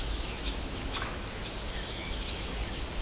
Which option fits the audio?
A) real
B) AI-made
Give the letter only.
B